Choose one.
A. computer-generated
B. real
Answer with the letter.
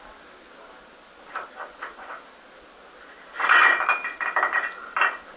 B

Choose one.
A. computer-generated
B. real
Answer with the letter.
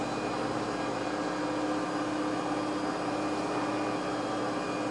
B